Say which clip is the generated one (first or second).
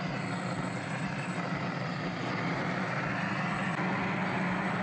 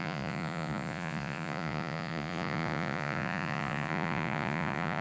second